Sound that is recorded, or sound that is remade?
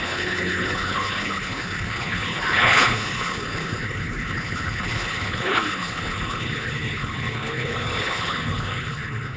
remade